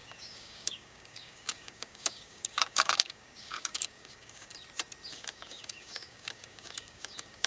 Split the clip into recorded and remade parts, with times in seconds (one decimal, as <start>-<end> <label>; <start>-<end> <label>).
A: 0.0-4.5 remade; 4.5-5.1 recorded; 5.1-7.5 remade